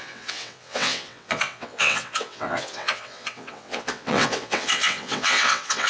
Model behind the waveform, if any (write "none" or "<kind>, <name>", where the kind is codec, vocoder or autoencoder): vocoder, WaveNeXt